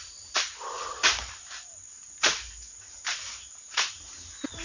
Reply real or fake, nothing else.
fake